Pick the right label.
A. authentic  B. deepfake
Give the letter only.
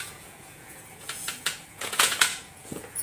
B